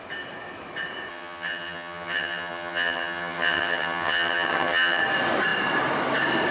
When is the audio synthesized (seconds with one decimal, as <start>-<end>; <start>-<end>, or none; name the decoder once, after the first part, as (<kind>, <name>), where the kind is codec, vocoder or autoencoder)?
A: 1.1-5.0 (vocoder, HiFi-GAN)